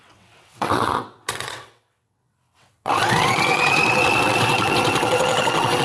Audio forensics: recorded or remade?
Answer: remade